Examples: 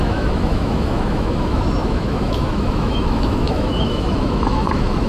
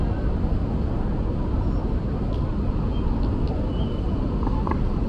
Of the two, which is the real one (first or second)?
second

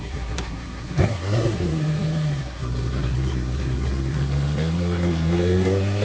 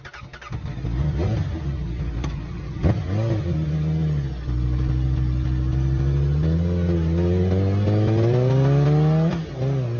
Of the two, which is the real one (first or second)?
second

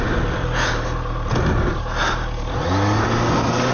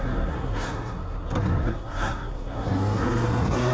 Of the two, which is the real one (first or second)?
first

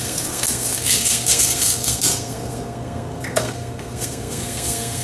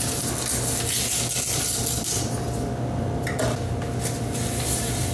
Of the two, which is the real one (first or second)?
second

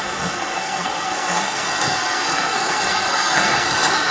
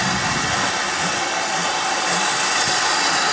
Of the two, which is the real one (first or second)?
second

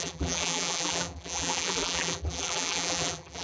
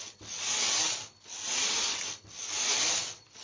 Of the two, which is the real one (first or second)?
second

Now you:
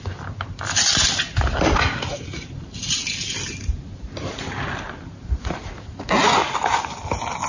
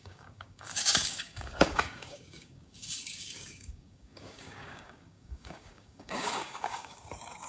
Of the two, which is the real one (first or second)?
first